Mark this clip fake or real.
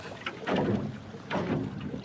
real